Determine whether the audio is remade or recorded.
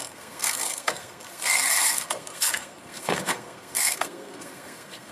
remade